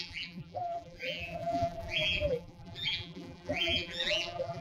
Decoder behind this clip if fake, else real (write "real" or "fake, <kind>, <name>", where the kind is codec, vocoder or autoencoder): fake, vocoder, BigVGAN v2